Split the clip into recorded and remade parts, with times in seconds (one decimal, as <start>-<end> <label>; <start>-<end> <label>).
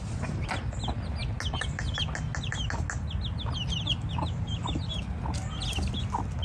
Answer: 0.0-6.4 recorded